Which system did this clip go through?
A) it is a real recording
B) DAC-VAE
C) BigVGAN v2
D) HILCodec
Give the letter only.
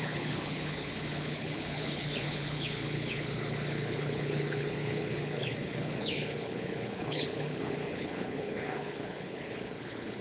D